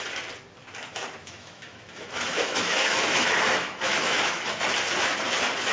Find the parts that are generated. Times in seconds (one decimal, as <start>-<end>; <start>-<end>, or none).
1.2-4.6